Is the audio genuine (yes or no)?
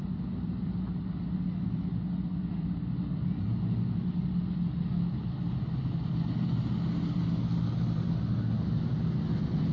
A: yes